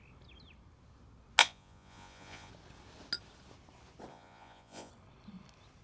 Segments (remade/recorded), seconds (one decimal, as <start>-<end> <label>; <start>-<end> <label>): 0.0-1.4 recorded; 1.4-2.5 remade; 2.5-4.1 recorded; 4.1-4.9 remade; 4.9-5.8 recorded